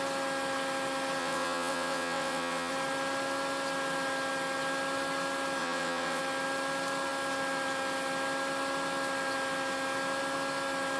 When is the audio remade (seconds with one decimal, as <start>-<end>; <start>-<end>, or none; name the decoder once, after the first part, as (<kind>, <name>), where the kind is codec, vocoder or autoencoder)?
1.2-2.7 (vocoder, WaveNeXt); 5.6-6.2

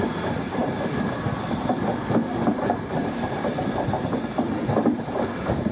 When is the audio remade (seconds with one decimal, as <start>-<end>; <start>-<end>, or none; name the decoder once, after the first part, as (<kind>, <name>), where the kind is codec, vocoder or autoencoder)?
0.0-5.7 (vocoder, BigVGAN v2)

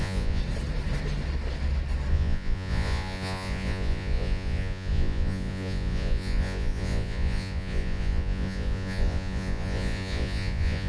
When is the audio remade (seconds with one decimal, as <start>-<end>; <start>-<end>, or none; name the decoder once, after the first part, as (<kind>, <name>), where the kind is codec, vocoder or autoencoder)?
0.0-0.4 (vocoder, Vocos); 2.1-10.9

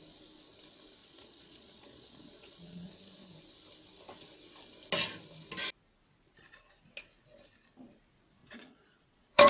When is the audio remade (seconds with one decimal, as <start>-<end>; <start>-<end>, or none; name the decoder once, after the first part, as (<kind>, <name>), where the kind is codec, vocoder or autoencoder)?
1.0-2.9 (vocoder, Vocos); 8.4-9.5

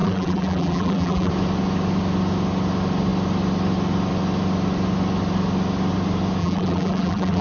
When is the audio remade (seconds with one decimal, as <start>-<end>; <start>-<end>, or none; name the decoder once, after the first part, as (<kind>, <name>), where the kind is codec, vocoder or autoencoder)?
0.0-1.3 (vocoder, BigVGAN v2); 6.4-7.4

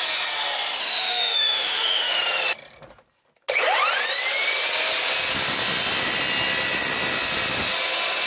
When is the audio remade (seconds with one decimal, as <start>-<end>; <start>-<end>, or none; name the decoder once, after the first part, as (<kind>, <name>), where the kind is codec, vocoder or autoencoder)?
0.8-2.1 (autoencoder, DAC-VAE)

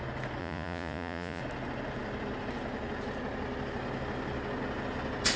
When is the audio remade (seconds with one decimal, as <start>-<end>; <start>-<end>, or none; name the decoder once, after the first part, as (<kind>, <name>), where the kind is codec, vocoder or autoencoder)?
0.4-1.4 (vocoder, Vocos)